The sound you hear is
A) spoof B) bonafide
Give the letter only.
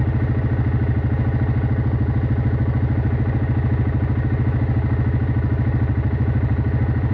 B